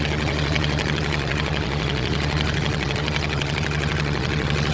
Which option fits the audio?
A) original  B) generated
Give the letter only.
B